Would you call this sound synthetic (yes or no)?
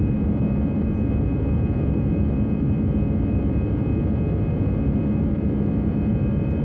yes